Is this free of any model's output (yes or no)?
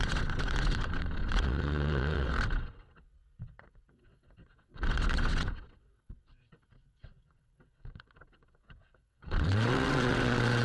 no